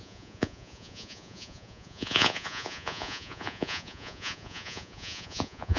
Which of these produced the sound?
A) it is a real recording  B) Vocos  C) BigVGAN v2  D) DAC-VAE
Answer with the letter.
B